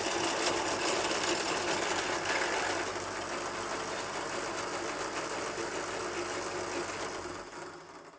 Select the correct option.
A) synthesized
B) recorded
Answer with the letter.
B